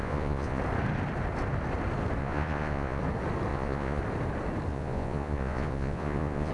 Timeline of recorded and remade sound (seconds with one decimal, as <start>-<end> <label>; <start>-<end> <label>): 0.0-0.6 remade; 0.6-2.2 recorded; 2.2-3.0 remade; 3.0-3.5 recorded; 3.5-4.0 remade; 4.0-4.7 recorded; 4.7-6.5 remade